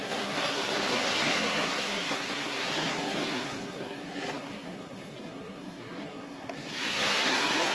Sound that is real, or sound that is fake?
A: fake